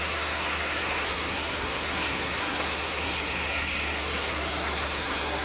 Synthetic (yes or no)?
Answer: yes